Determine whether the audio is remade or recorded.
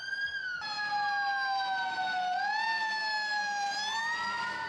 recorded